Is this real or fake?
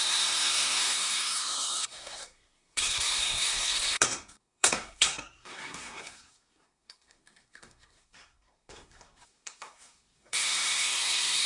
fake